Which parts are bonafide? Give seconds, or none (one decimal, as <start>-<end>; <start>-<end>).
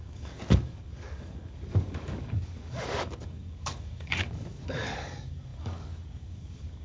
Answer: none